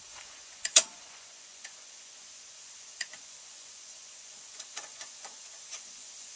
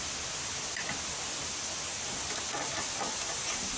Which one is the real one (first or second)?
second